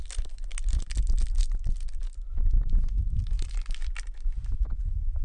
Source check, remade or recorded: recorded